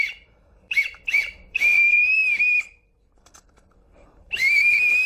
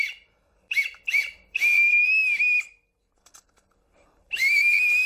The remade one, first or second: first